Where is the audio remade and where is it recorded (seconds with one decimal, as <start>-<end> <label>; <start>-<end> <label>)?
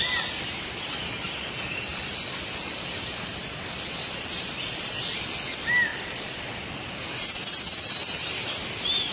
0.0-1.9 recorded; 1.9-5.2 remade; 5.2-5.9 recorded; 5.9-6.4 remade; 6.4-9.1 recorded